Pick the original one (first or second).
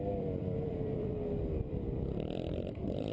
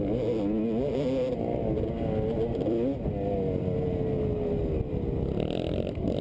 second